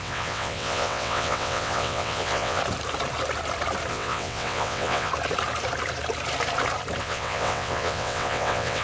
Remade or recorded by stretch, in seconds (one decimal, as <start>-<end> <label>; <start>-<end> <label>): 0.0-2.6 remade; 2.6-3.9 recorded; 3.9-5.1 remade; 5.1-7.0 recorded; 7.0-8.8 remade

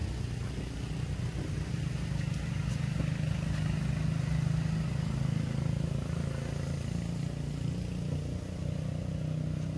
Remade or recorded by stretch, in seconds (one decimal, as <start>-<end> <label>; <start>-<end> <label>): 0.0-9.8 recorded

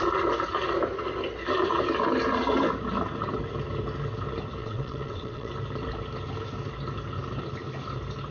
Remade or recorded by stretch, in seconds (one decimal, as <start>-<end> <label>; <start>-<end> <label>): 0.0-4.6 recorded; 4.6-5.5 remade; 5.5-8.3 recorded

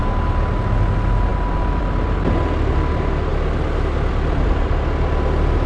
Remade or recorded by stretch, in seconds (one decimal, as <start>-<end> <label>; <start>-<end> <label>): 0.0-5.7 recorded

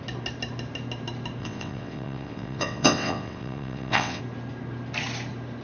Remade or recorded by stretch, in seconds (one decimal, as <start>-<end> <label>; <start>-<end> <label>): 0.0-1.4 recorded; 1.4-4.2 remade; 4.2-5.6 recorded

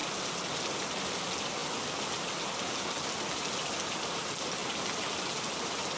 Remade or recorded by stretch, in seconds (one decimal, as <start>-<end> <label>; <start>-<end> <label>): 0.0-6.0 recorded